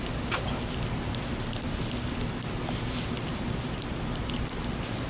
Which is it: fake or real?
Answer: real